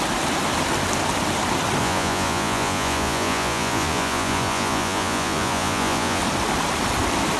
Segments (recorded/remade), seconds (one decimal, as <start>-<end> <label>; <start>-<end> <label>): 0.0-1.8 recorded; 1.8-6.2 remade; 6.2-7.4 recorded